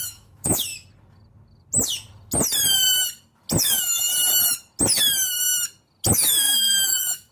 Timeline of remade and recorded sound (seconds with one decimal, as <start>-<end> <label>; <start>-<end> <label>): 0.0-0.7 remade; 0.7-3.6 recorded; 3.6-4.1 remade; 4.1-6.1 recorded; 6.1-7.3 remade